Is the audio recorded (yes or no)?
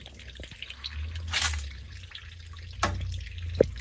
yes